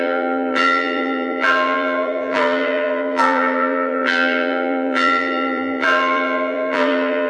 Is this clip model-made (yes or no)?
yes